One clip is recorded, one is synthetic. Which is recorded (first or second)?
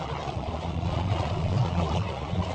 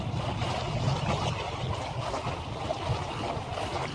second